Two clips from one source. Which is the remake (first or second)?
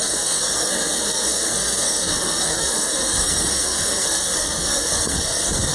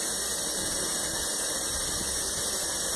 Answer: first